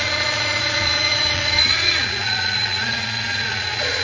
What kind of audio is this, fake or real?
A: fake